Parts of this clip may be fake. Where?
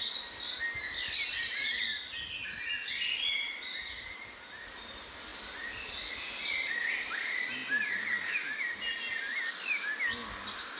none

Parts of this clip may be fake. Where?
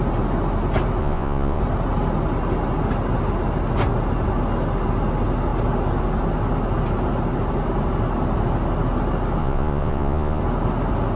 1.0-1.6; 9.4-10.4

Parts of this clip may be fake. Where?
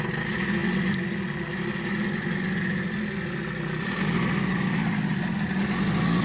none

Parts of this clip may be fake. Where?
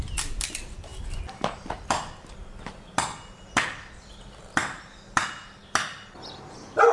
none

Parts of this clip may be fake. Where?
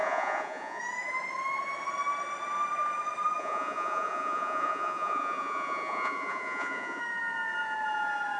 0.0-0.8; 3.4-7.0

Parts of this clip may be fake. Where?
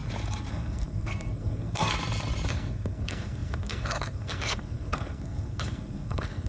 0.5-1.9; 2.5-6.5